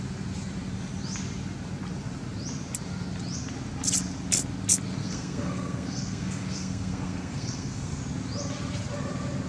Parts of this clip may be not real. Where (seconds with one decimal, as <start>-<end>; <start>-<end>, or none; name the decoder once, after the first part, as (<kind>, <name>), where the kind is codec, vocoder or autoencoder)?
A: 5.0-8.0 (codec, SNAC)